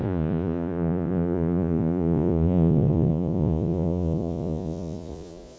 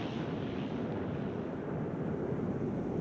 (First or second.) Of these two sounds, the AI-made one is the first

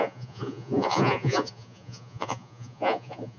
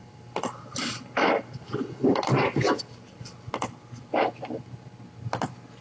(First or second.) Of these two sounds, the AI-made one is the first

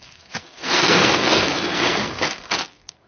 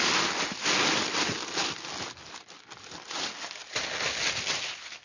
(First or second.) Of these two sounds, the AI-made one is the first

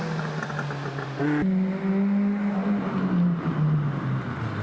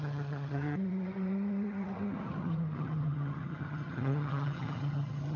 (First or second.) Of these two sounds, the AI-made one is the second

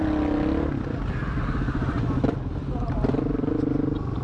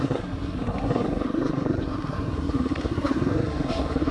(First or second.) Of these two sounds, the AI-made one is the second